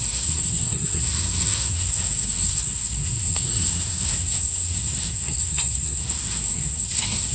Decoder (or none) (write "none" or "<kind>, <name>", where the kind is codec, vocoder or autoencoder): codec, SNAC